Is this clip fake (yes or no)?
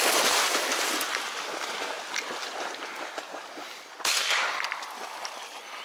no